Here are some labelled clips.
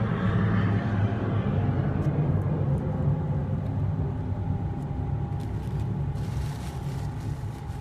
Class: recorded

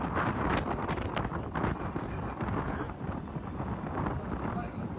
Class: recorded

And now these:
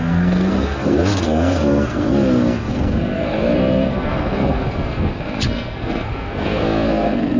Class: remade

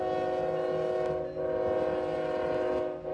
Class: recorded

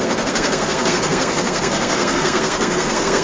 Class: remade